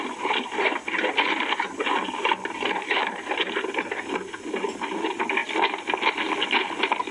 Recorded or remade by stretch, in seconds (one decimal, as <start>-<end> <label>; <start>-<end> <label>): 0.0-7.1 recorded